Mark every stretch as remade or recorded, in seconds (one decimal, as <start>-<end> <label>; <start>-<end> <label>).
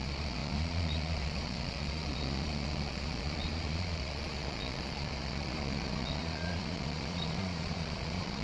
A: 0.0-8.4 remade